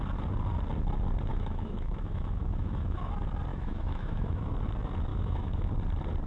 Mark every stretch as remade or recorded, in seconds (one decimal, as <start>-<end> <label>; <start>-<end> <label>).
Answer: 0.0-1.3 recorded; 1.3-3.1 remade; 3.1-3.5 recorded; 3.5-4.5 remade; 4.5-5.1 recorded; 5.1-5.7 remade; 5.7-6.3 recorded